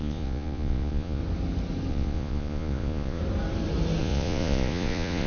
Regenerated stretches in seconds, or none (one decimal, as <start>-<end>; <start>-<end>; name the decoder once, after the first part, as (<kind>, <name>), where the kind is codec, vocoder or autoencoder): 0.0-1.2 (vocoder, Vocos); 1.9-3.2; 4.0-5.3